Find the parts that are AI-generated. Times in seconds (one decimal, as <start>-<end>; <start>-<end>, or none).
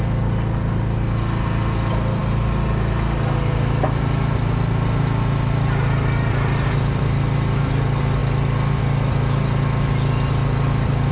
none